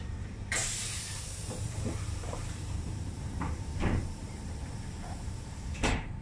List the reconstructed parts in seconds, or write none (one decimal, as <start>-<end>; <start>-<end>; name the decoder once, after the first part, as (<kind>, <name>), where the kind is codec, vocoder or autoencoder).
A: 0.0-6.2 (vocoder, BigVGAN v2)